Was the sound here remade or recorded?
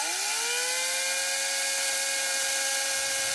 recorded